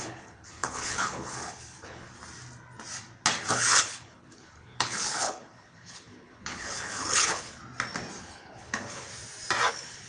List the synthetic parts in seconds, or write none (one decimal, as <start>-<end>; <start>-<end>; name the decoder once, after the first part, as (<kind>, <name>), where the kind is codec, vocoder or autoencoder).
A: 0.0-2.2 (codec, HILCodec); 3.5-7.6; 8.2-9.1; 9.7-10.1